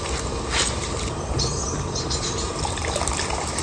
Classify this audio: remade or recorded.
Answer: recorded